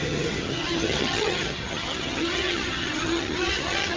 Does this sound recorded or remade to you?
remade